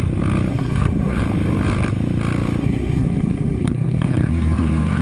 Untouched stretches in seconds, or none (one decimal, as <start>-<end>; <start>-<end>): 0.0-0.5; 1.2-2.6